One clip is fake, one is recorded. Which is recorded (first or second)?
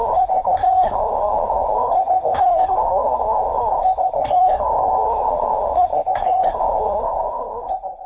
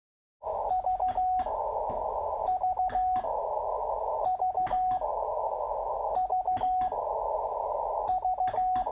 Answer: second